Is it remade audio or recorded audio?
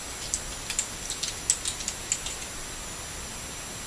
recorded